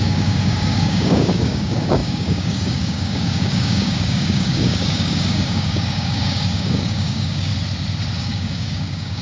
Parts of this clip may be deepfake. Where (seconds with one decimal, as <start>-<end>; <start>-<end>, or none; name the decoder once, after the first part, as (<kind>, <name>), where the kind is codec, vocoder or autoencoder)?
0.0-7.5 (codec, DAC); 8.2-9.2

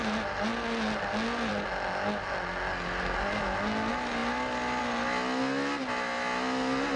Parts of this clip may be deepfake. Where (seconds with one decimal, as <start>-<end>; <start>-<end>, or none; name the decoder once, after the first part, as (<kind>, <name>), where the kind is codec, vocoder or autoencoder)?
none

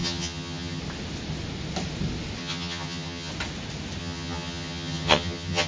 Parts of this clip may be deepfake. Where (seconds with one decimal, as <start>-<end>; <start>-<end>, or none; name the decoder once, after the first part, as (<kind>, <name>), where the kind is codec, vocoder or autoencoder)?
0.0-0.8 (vocoder, HiFi-GAN); 2.4-3.3; 4.0-5.7

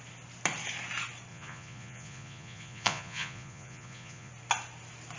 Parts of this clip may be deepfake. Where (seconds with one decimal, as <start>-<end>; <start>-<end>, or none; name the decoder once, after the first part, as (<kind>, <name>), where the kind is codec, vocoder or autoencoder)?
1.3-4.3 (vocoder, Vocos)

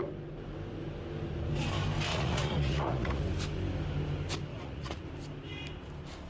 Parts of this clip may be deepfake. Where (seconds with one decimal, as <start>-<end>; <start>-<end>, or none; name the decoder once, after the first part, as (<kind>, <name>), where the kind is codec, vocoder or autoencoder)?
2.1-3.2 (vocoder, Vocos); 4.5-5.0

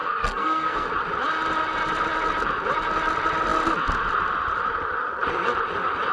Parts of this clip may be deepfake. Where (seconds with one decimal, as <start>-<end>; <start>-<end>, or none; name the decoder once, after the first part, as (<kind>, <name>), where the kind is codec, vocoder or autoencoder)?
0.0-0.9 (codec, SNAC)

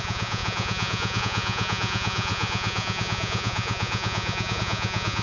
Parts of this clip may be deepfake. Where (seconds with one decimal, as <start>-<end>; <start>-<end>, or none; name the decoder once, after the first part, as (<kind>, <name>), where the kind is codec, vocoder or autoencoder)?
0.0-5.2 (vocoder, Vocos)